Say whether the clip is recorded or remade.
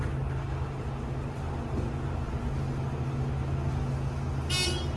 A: recorded